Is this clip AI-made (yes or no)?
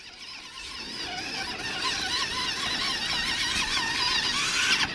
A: no